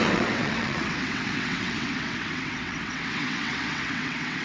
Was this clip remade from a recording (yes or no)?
yes